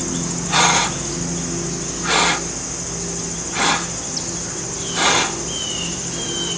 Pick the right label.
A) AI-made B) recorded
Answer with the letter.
B